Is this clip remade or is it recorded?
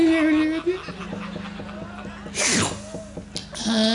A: recorded